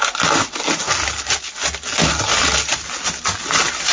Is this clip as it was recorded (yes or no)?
yes